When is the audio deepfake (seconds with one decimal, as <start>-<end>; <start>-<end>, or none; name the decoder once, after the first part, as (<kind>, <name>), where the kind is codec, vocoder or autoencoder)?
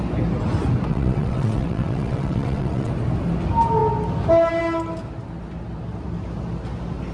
0.9-2.9 (vocoder, WaveNeXt)